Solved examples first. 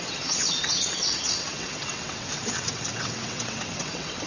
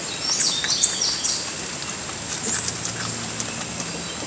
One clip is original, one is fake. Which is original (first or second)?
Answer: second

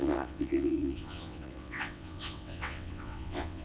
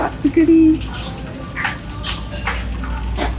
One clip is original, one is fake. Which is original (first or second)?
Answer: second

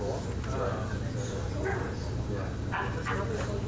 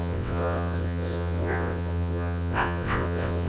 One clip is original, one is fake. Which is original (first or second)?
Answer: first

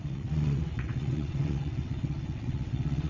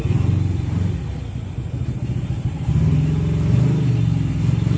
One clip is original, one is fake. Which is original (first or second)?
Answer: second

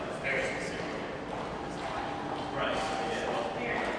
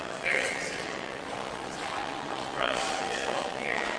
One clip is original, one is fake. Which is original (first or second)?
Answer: first